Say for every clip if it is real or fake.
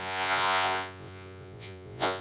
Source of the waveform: fake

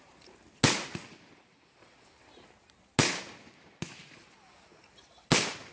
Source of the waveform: real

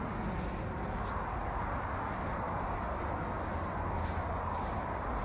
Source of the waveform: real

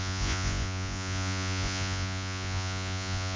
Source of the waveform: fake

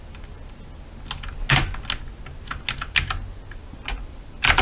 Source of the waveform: real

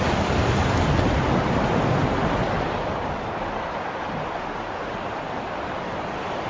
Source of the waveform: real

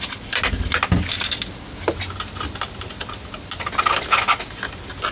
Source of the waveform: real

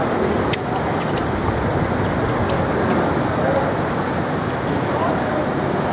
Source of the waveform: real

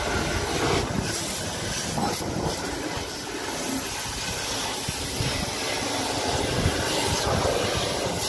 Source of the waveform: real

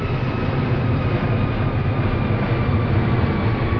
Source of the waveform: real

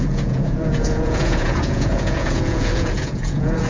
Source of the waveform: fake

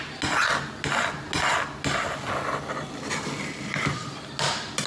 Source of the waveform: real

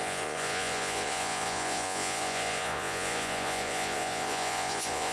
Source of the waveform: fake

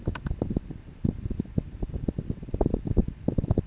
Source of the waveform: real